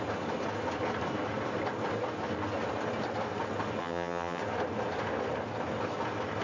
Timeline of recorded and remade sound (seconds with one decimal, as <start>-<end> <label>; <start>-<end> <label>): 0.0-3.8 recorded; 3.8-4.4 remade; 4.4-6.4 recorded